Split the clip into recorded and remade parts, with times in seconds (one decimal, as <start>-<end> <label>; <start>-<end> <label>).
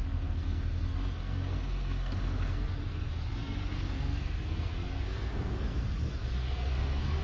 0.0-7.2 remade